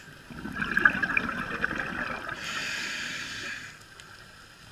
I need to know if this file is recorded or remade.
recorded